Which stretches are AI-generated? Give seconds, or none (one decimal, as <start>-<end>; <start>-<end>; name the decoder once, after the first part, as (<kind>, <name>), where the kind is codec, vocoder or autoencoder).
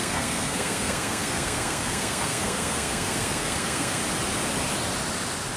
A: 0.0-4.0 (codec, SNAC)